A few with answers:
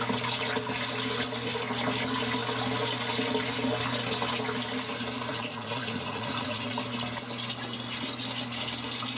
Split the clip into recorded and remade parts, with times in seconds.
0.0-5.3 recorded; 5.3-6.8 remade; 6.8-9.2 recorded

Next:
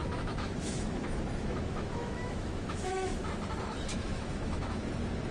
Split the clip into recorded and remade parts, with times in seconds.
0.0-3.2 remade; 3.2-3.9 recorded; 3.9-4.8 remade; 4.8-5.3 recorded

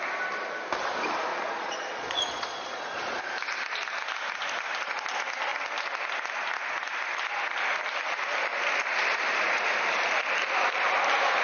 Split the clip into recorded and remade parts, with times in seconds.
0.0-1.3 recorded; 1.3-3.2 remade; 3.2-11.4 recorded

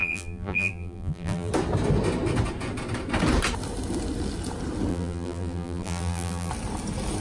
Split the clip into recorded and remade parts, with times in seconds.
0.0-1.5 remade; 1.5-4.9 recorded; 4.9-6.5 remade; 6.5-7.2 recorded

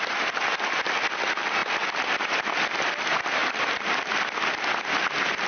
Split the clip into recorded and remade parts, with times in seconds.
0.0-5.5 recorded